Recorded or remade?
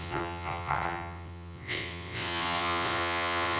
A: remade